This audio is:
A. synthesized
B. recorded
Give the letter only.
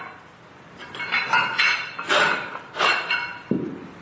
B